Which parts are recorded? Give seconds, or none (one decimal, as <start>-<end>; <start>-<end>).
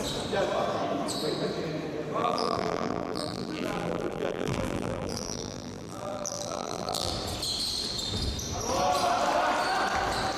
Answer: 0.0-2.2; 7.1-10.4